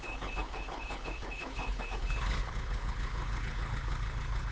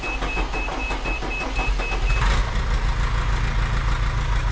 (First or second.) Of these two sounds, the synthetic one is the first